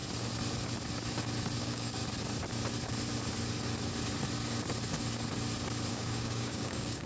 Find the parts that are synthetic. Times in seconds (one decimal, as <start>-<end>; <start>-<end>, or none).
1.6-2.0; 5.9-7.1